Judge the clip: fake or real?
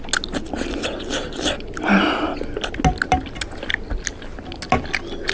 real